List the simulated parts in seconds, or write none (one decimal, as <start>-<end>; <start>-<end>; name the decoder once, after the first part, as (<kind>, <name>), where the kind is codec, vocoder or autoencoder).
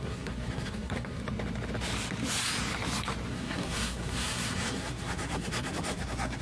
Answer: 0.0-1.2 (codec, SNAC); 3.3-6.4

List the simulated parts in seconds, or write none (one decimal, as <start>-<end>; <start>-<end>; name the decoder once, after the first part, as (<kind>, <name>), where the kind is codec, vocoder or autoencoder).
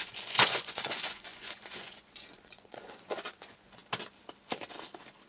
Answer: 0.0-3.8 (vocoder, Vocos)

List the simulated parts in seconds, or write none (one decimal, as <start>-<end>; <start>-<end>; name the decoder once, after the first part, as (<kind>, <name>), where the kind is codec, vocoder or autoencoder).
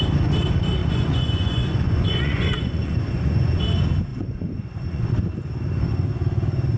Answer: 0.8-3.6 (vocoder, Vocos); 4.1-5.1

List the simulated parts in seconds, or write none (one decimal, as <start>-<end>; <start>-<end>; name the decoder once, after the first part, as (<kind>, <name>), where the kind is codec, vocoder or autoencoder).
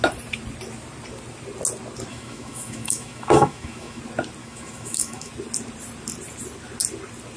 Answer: 2.1-4.0 (autoencoder, DAC-VAE); 4.4-5.3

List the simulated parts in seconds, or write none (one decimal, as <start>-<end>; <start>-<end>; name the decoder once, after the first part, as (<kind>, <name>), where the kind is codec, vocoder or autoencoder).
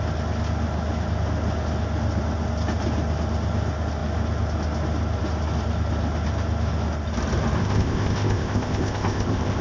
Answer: 7.6-9.6 (codec, ZipCodec)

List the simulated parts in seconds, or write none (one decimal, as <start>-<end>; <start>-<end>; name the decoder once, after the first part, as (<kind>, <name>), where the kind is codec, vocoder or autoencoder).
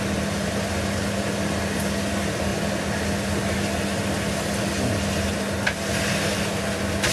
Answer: none